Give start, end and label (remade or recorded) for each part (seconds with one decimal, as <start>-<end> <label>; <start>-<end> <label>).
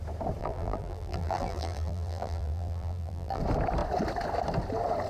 0.0-0.4 recorded; 0.4-3.4 remade; 3.4-5.1 recorded